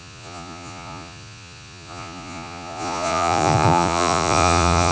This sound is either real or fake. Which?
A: fake